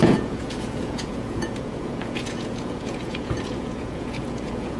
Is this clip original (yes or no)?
no